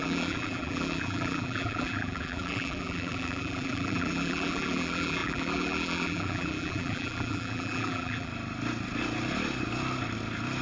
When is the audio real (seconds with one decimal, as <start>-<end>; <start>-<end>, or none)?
8.3-10.6